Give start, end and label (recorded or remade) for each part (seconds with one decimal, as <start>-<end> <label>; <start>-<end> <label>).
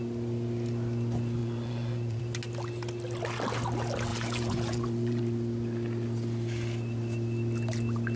0.0-1.4 recorded; 1.4-2.2 remade; 2.2-4.1 recorded; 4.1-5.2 remade; 5.2-8.2 recorded